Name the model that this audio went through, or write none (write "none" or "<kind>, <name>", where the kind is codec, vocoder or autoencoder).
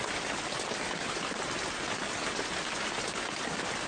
none